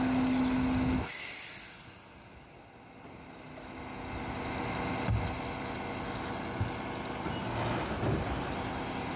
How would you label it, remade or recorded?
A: recorded